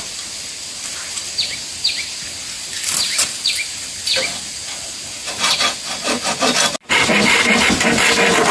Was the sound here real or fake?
real